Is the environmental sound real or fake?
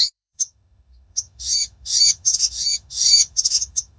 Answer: fake